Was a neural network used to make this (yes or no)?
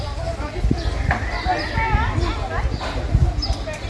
no